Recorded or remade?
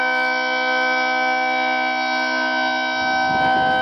recorded